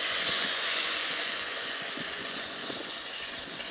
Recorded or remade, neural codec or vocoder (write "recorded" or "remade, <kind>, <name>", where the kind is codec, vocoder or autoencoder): remade, vocoder, Vocos